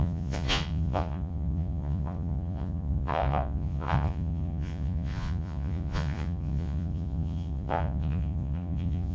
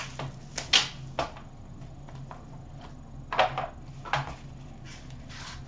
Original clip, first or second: second